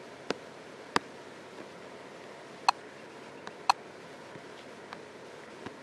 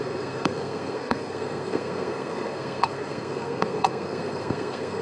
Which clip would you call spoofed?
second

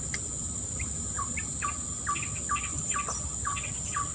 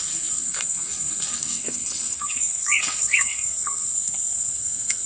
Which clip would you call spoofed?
second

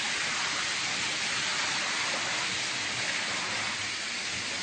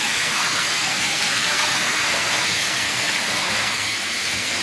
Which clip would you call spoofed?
second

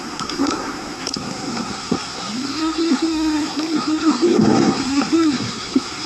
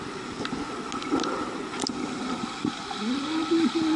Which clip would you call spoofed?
first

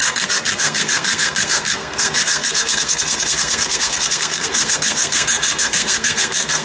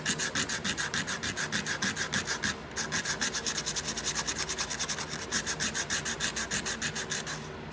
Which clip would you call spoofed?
first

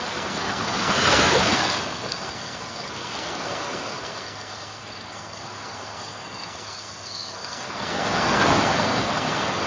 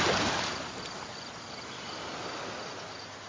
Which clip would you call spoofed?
first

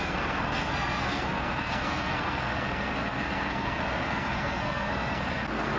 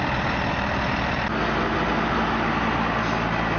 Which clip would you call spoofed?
first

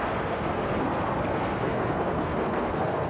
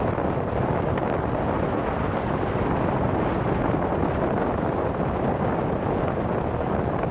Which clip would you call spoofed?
first